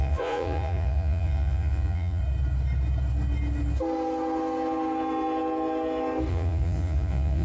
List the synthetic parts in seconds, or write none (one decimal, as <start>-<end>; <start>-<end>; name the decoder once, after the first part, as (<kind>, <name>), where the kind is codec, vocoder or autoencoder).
0.0-2.2 (vocoder, Vocos); 6.3-7.4